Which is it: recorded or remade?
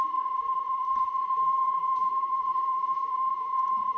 remade